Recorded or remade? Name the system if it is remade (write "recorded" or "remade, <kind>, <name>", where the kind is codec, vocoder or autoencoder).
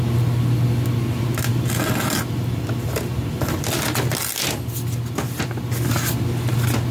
recorded